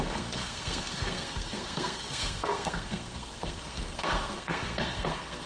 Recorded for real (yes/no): no